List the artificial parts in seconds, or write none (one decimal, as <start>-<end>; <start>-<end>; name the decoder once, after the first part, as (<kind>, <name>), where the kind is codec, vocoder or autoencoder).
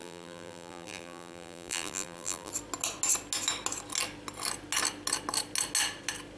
0.0-2.5 (vocoder, BigVGAN v2)